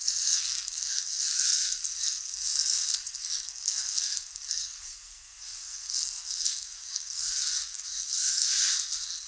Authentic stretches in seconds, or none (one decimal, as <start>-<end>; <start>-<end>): none